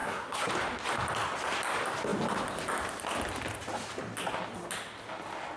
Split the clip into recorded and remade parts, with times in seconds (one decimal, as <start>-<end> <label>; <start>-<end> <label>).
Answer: 0.0-0.5 remade; 0.5-5.6 recorded